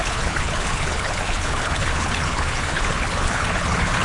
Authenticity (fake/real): fake